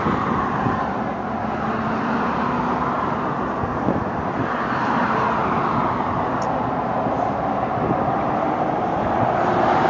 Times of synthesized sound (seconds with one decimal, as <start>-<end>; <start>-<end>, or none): none